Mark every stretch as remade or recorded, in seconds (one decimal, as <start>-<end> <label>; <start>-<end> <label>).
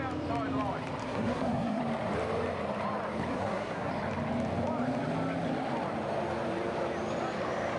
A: 0.0-1.0 recorded; 1.0-1.8 remade; 1.8-3.3 recorded; 3.3-3.9 remade; 3.9-7.8 recorded